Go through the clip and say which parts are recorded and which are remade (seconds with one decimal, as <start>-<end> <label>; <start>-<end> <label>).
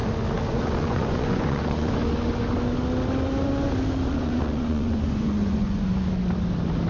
0.0-0.5 recorded; 0.5-2.0 remade; 2.0-4.1 recorded; 4.1-5.9 remade; 5.9-6.9 recorded